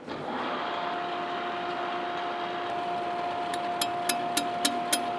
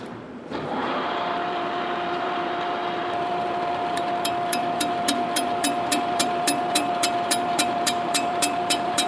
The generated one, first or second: second